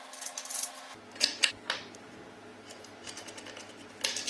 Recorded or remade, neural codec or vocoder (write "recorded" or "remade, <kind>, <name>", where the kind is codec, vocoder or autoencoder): recorded